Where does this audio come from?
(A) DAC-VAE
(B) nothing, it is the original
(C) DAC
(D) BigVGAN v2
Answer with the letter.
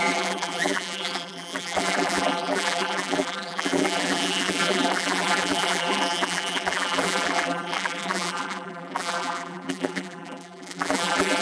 D